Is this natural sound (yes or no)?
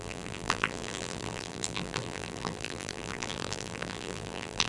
no